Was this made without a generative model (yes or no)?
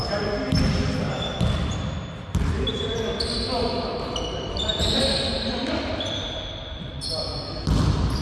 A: yes